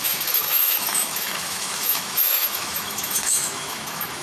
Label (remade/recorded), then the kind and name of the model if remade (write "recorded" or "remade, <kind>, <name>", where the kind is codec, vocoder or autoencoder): remade, autoencoder, DAC-VAE